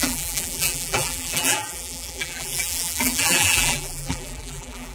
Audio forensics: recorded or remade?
remade